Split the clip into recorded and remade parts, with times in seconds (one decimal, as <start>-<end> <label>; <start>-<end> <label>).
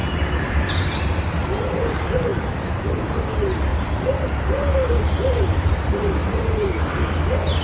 0.0-0.5 remade; 0.5-2.3 recorded; 2.3-3.0 remade; 3.0-3.7 recorded; 3.7-5.7 remade; 5.7-6.2 recorded; 6.2-6.8 remade; 6.8-7.6 recorded